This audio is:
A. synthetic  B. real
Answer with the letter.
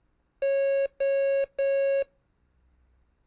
B